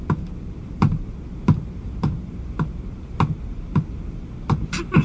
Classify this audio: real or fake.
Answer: real